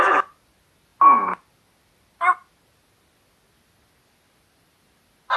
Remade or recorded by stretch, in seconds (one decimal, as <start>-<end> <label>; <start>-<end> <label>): 0.0-5.4 recorded